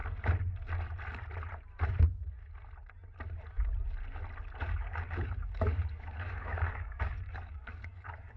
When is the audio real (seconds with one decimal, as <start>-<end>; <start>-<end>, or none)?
0.0-4.6